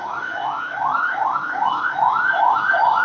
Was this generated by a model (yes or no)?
yes